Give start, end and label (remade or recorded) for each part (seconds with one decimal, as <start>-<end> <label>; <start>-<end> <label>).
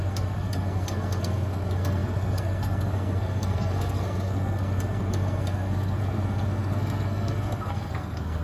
0.0-8.4 remade